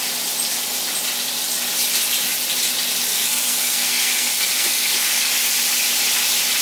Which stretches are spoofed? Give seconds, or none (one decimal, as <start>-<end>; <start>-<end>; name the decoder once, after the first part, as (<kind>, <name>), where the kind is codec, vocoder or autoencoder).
3.1-5.4 (codec, SNAC)